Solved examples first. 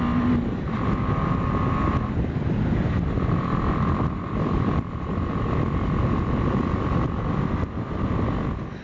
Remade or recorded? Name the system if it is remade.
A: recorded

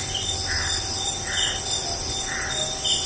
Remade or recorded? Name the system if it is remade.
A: recorded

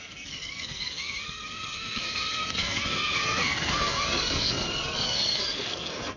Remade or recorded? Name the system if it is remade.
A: remade, codec, SNAC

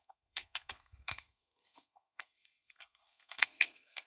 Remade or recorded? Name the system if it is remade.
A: remade, codec, SNAC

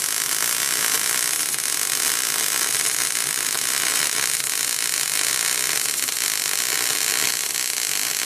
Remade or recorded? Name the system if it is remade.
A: recorded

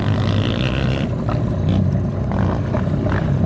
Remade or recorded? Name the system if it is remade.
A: recorded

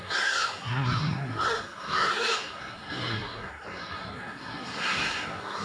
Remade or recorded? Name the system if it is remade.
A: remade, codec, SNAC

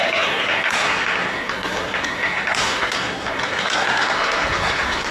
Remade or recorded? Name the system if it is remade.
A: remade, codec, SNAC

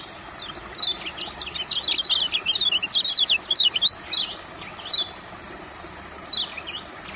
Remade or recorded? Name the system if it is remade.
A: recorded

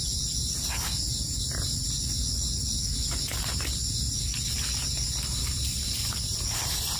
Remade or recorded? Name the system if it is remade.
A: recorded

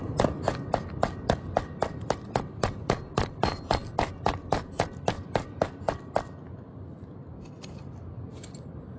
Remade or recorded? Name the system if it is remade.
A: recorded